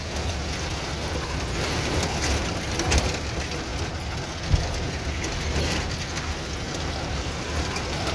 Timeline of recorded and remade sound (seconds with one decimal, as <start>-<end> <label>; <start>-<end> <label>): 0.0-8.1 recorded